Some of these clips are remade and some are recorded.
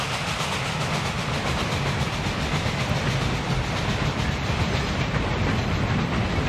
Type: recorded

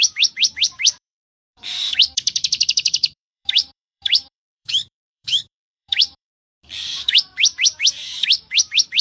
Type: remade